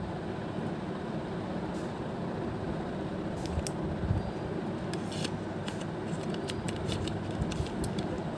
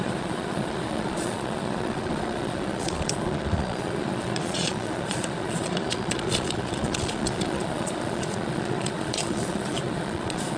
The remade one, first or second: second